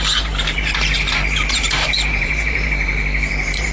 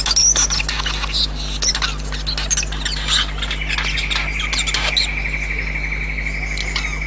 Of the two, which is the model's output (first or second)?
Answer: first